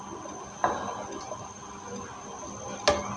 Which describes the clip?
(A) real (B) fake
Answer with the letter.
A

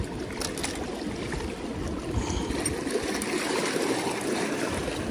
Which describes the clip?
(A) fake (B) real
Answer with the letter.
B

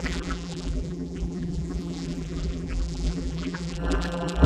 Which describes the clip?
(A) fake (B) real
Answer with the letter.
A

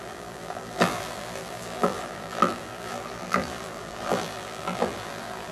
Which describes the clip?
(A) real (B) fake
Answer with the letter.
B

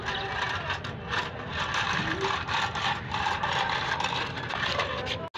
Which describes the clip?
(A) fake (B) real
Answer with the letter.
B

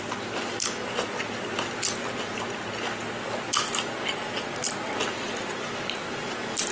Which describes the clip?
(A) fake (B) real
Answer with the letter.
B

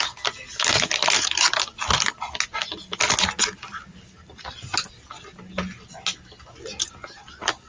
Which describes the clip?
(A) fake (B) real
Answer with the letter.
B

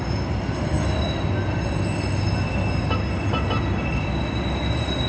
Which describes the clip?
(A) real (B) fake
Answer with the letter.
A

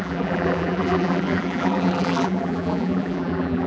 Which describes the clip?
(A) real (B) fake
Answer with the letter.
B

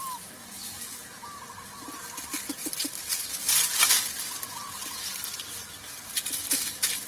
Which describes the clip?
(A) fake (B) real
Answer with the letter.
B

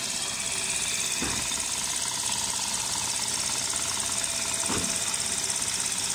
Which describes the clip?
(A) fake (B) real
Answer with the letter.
B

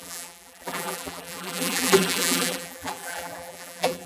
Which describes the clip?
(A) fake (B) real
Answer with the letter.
A